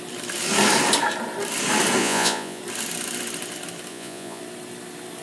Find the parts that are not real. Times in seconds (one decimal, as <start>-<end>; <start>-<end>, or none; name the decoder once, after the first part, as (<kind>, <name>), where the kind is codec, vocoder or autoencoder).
2.0-2.6 (vocoder, Vocos); 3.9-4.4